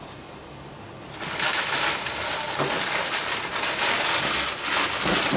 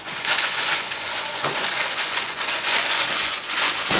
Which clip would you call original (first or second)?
first